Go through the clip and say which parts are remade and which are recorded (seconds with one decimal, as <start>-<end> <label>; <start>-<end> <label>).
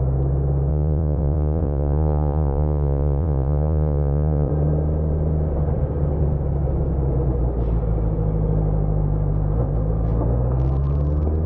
0.0-0.7 recorded; 0.7-4.5 remade; 4.5-11.5 recorded